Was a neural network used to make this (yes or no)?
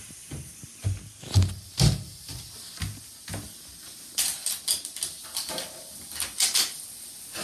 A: no